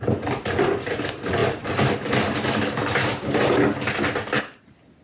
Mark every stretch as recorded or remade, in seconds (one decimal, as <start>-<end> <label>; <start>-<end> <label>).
0.0-5.0 recorded

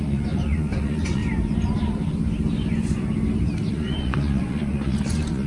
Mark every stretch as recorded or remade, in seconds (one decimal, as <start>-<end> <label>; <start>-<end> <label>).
0.0-1.2 remade; 1.2-3.7 recorded; 3.7-5.5 remade

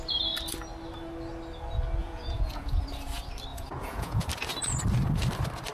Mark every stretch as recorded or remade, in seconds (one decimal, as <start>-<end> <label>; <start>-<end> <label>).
0.0-2.0 recorded; 2.0-2.8 remade; 2.8-3.5 recorded; 3.5-4.3 remade; 4.3-5.7 recorded

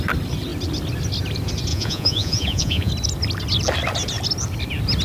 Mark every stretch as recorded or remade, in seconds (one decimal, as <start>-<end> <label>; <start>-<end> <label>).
0.0-1.7 recorded; 1.7-2.9 remade; 2.9-5.0 recorded

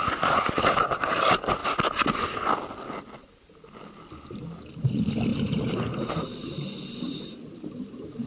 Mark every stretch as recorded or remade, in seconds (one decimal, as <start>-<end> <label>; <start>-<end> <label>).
0.0-8.3 recorded